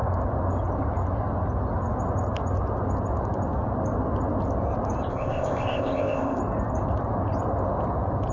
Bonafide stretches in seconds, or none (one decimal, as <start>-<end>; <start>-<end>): 0.0-5.1; 6.4-8.3